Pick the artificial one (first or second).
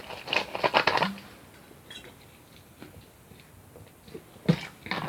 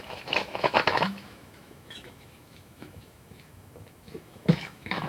second